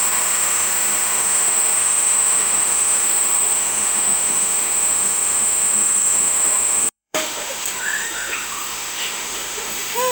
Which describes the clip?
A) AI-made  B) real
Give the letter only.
A